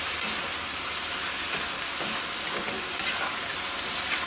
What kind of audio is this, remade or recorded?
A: recorded